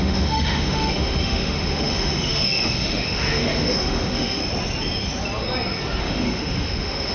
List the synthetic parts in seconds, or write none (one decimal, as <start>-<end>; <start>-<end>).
0.0-4.4; 6.0-7.1

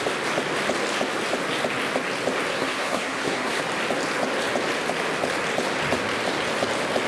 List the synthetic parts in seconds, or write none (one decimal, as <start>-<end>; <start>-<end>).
2.5-3.6

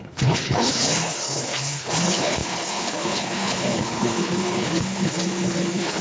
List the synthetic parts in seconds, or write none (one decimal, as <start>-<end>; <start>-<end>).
0.0-6.0

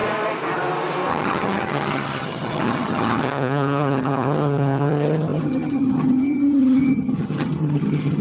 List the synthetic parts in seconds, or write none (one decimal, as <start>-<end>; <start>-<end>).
1.1-8.2